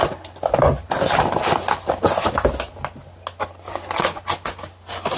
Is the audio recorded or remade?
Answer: recorded